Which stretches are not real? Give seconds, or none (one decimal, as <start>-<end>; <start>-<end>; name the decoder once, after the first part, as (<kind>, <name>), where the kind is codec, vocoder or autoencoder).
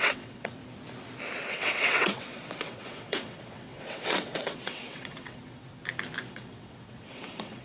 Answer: 0.0-0.6 (vocoder, WaveNeXt); 1.5-5.7; 6.3-7.6